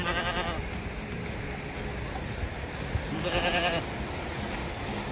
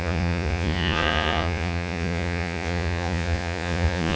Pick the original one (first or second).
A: first